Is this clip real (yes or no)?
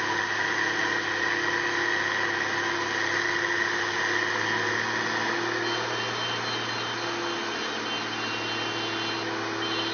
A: yes